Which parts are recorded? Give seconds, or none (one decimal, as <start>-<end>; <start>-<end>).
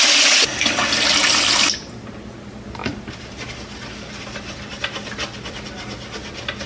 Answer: 0.0-6.7